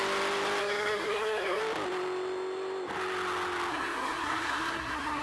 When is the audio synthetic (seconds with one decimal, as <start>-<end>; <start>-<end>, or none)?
0.6-1.6; 3.7-5.2